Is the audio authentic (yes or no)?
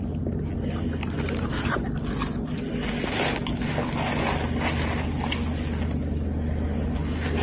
yes